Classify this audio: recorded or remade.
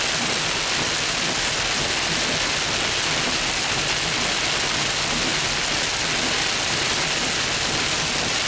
recorded